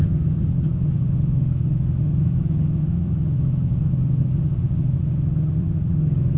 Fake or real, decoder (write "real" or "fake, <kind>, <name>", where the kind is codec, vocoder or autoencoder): fake, vocoder, HiFi-GAN